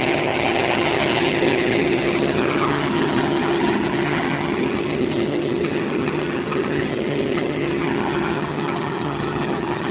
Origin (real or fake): fake